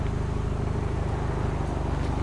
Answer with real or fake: real